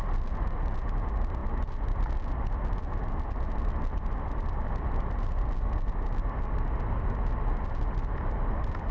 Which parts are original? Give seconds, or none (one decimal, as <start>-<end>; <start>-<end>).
0.0-8.9